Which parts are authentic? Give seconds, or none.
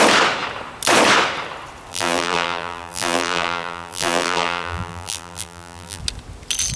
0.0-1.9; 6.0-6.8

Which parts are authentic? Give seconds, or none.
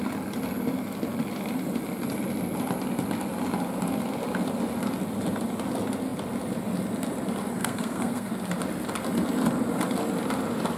0.0-7.6; 8.3-10.8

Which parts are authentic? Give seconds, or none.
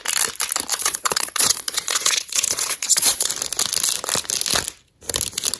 0.0-0.7; 3.3-5.6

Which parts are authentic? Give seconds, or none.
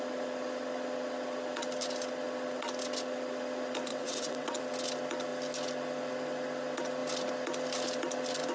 0.0-3.9; 4.6-8.5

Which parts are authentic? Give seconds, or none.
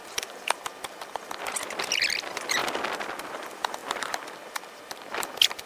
2.6-3.2